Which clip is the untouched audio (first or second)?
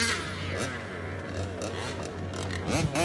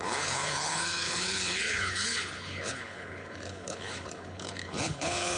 first